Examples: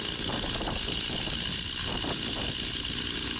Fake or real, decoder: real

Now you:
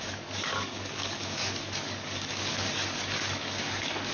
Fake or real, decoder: fake, codec, DAC